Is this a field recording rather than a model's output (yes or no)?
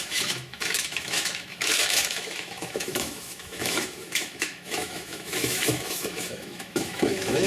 no